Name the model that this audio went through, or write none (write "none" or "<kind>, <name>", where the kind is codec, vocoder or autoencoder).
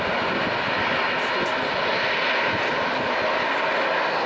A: none